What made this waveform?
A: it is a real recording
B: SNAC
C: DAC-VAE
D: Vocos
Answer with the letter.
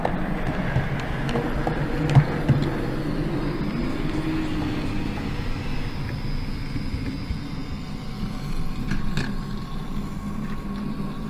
A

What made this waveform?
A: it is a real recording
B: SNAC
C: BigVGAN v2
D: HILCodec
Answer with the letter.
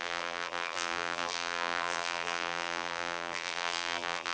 C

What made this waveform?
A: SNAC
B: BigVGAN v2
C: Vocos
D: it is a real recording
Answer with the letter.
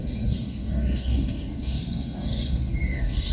A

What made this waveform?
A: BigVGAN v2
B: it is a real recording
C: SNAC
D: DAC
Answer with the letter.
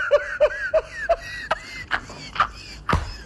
B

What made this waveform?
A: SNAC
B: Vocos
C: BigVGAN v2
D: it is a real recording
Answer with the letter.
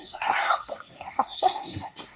A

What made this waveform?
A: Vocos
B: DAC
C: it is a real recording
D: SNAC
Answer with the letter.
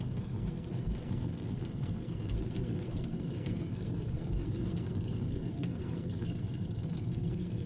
D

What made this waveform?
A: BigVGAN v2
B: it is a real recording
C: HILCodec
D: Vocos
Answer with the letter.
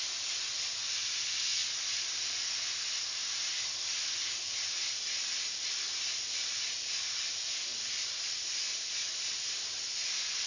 B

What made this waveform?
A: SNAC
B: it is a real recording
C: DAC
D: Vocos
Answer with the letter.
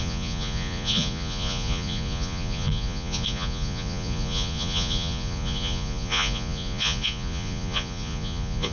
D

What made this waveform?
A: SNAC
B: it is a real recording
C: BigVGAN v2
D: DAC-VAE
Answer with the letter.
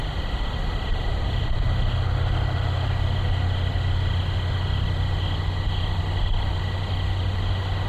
B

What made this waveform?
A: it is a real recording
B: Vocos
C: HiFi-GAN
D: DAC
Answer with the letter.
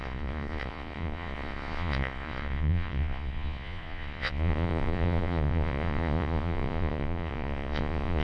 B